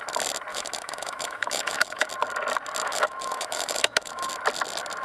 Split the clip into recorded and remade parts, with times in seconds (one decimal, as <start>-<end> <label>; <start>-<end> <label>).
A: 0.0-0.5 recorded; 0.5-2.1 remade; 2.1-2.8 recorded; 2.8-4.3 remade; 4.3-5.0 recorded